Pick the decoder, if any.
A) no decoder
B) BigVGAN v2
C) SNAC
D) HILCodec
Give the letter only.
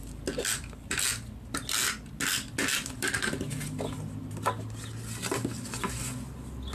A